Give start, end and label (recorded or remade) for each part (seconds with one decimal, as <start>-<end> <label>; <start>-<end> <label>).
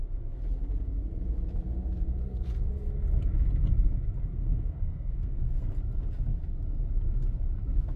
0.0-4.3 recorded; 4.3-5.7 remade; 5.7-8.0 recorded